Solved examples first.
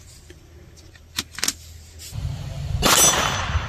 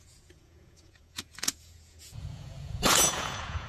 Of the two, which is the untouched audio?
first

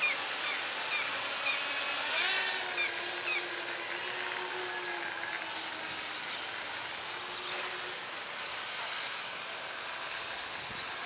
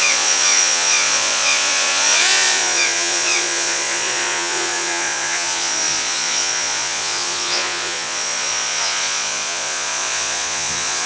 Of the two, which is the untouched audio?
first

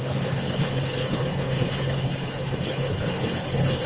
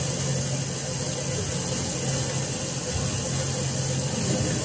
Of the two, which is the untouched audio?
second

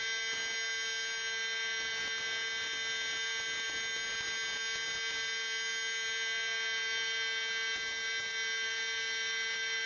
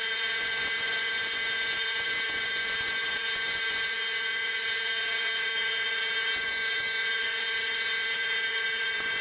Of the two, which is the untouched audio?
first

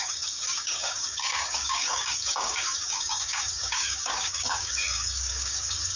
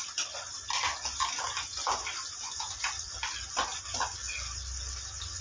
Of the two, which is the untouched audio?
second